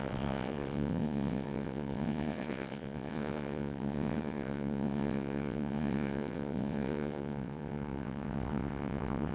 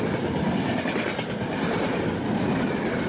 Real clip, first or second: second